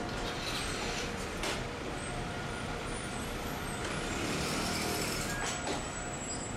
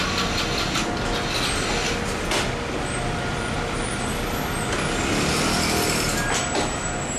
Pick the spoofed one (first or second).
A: first